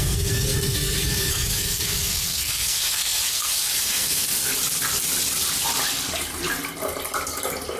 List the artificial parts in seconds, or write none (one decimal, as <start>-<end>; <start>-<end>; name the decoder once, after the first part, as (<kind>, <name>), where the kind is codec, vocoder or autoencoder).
0.0-4.5 (codec, SNAC)

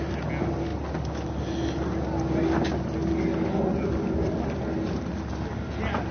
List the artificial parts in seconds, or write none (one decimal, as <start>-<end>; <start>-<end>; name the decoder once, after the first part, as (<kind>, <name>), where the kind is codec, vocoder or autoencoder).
none

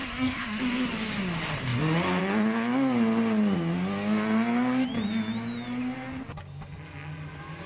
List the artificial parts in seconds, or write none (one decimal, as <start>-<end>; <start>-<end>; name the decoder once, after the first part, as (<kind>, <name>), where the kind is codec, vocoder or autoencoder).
0.0-0.6 (codec, SNAC)

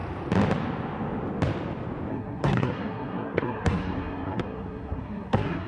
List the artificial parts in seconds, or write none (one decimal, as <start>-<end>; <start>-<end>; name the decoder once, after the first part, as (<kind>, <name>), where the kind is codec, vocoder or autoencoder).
2.1-5.7 (codec, SNAC)

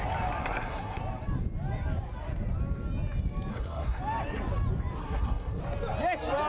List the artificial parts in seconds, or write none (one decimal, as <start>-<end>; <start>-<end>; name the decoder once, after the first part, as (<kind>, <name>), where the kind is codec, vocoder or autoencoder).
0.4-1.0 (codec, SNAC); 3.5-4.0; 5.0-5.6

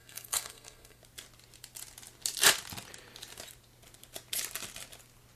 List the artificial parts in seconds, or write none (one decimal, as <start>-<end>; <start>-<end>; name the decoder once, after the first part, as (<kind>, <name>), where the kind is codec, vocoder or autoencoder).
0.0-1.0 (codec, SNAC)

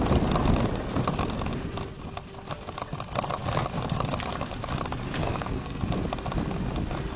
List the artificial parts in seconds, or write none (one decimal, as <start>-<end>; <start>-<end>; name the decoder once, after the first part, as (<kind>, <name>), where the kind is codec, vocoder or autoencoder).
5.2-5.8 (codec, SNAC)

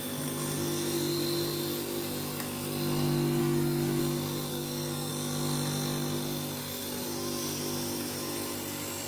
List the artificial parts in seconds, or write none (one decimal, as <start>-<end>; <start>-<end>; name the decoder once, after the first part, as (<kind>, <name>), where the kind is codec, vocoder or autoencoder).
3.4-4.0 (codec, SNAC); 4.5-5.1; 6.6-7.6